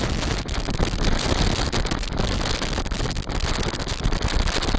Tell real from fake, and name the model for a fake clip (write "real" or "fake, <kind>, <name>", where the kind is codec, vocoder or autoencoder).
real